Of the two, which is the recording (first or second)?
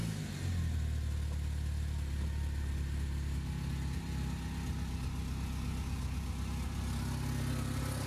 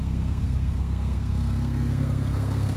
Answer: first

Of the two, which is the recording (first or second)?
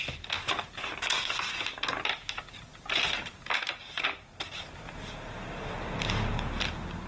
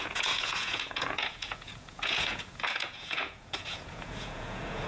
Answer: first